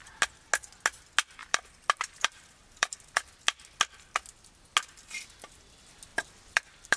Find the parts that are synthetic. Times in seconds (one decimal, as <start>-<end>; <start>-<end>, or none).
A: 1.4-3.4; 6.1-7.0